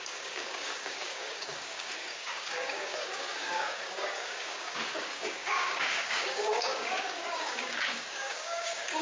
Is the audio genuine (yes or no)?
no